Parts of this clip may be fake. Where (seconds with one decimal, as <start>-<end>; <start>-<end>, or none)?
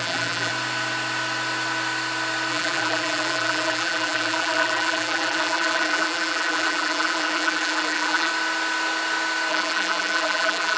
0.0-0.5; 2.5-8.3; 9.5-10.8